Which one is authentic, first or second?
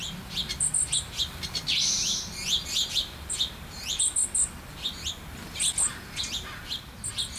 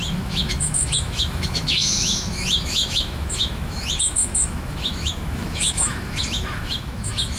first